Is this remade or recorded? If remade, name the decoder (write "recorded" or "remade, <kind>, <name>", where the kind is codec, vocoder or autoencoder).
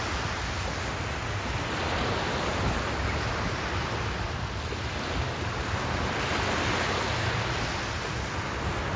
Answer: recorded